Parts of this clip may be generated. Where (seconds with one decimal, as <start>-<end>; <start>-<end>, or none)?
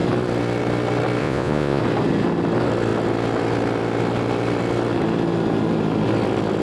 1.2-1.8